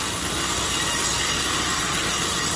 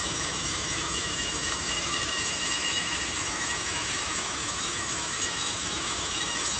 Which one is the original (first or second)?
first